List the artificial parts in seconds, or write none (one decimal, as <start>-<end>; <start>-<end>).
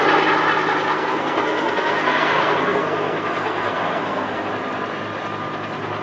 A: 0.9-4.5